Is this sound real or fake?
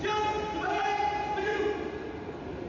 real